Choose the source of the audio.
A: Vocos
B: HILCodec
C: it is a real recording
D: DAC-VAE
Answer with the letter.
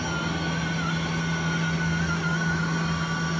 C